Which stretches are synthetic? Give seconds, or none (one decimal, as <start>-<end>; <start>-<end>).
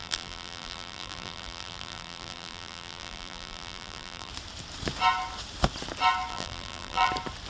0.0-4.3; 6.3-7.1